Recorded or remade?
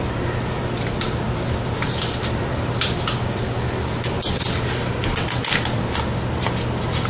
recorded